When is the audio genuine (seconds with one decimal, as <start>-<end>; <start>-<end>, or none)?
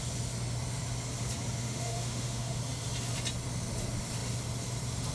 0.0-1.6; 2.6-5.1